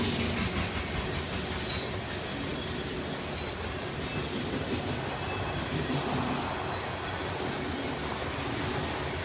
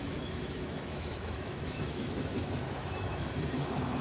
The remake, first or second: second